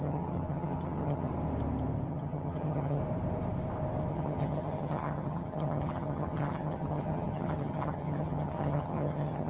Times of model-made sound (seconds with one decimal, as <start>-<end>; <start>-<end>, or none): 0.0-1.3; 2.1-3.0; 4.1-9.5